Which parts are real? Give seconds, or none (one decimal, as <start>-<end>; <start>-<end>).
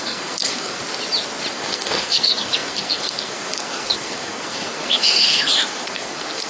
0.8-1.5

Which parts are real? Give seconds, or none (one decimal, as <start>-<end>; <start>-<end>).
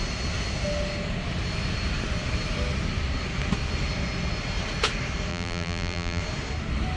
0.0-5.3; 6.2-7.0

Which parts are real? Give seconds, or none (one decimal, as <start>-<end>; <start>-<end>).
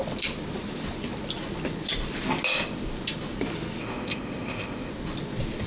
0.0-3.8; 4.9-5.7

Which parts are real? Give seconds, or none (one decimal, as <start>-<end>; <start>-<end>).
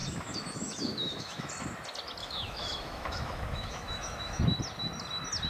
1.5-2.2; 4.4-5.5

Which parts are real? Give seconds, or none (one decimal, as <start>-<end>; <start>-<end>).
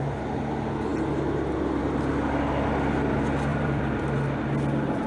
0.0-3.5; 4.0-5.1